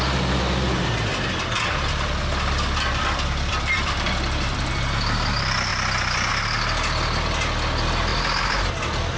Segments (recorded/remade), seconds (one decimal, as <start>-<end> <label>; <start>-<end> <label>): 0.0-1.1 recorded; 1.1-4.7 remade; 4.7-5.7 recorded; 5.7-6.3 remade; 6.3-8.1 recorded; 8.1-8.7 remade; 8.7-9.2 recorded